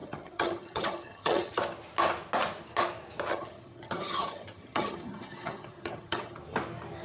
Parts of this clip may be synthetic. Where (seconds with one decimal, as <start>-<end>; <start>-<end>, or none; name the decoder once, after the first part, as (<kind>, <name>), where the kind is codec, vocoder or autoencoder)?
0.0-1.6 (vocoder, HiFi-GAN); 3.3-6.4